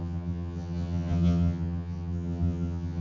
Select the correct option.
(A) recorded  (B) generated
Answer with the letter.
B